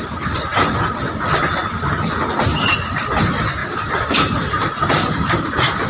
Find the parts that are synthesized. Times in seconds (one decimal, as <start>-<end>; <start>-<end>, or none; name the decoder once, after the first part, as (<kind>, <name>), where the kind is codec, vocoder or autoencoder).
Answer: 0.0-0.5 (vocoder, BigVGAN v2); 1.0-1.6; 2.8-5.9